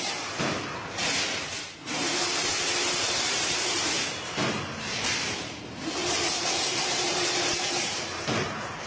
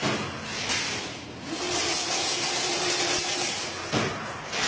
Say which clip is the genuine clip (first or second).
second